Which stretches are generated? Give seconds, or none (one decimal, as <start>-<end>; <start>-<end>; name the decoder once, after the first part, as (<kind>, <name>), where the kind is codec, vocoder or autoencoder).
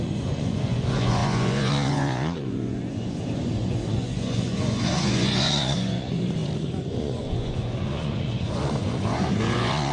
0.0-9.9 (vocoder, Vocos)